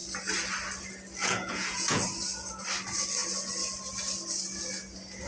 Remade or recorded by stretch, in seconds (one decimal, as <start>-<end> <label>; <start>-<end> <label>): 0.0-1.2 recorded; 1.2-2.0 remade; 2.0-5.3 recorded